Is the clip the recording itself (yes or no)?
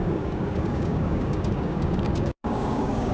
no